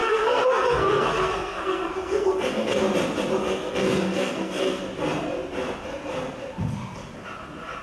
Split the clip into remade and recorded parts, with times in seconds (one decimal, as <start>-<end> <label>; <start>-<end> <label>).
0.0-2.8 remade; 2.8-3.4 recorded; 3.4-4.8 remade; 4.8-7.8 recorded